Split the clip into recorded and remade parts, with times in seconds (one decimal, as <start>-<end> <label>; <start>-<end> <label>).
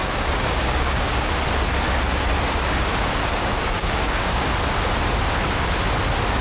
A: 0.0-1.3 remade; 1.3-3.3 recorded; 3.3-4.4 remade; 4.4-6.4 recorded